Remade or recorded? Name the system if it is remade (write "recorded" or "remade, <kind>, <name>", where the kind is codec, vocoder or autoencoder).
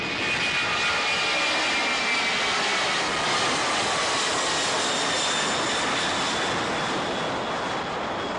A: recorded